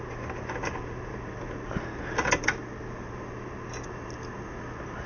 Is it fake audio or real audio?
real